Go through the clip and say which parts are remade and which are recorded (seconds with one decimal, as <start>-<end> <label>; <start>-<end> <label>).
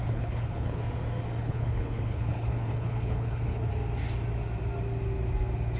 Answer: 0.0-0.8 remade; 0.8-1.4 recorded; 1.4-3.7 remade; 3.7-5.8 recorded